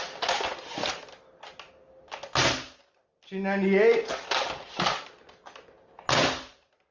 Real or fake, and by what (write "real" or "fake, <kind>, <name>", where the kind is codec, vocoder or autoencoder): real